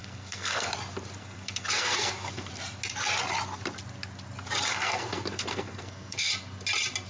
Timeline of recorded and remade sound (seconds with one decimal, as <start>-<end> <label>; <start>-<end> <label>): 0.0-0.7 remade; 0.7-1.2 recorded; 1.2-2.5 remade; 2.5-4.7 recorded; 4.7-6.3 remade; 6.3-7.1 recorded